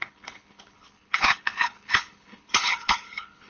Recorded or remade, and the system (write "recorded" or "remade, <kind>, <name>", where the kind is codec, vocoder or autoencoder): remade, codec, HILCodec